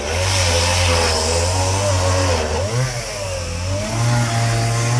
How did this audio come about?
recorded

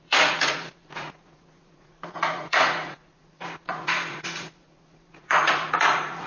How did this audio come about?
remade